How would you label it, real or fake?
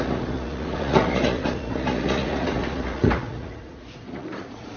fake